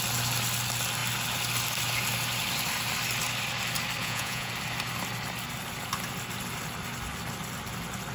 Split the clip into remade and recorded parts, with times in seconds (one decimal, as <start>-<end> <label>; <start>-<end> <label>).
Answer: 0.0-4.0 recorded; 4.0-4.5 remade; 4.5-8.1 recorded